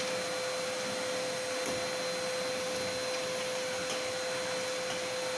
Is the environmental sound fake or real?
real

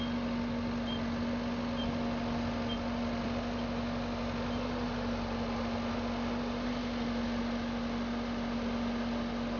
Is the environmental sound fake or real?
real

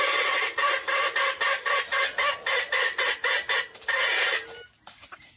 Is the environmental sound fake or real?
real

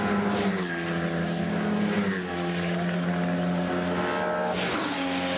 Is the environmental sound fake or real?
real